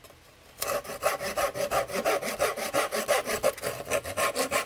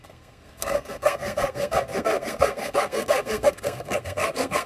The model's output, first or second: second